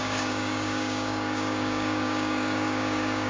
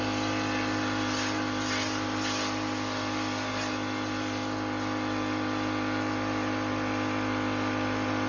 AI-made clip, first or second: first